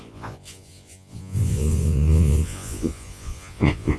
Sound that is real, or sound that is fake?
fake